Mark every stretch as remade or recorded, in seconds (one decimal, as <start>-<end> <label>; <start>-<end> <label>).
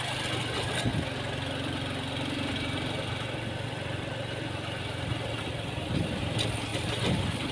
0.0-7.5 recorded